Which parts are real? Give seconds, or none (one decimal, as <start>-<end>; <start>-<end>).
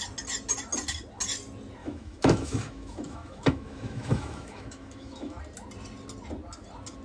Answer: 0.0-1.8; 5.4-7.0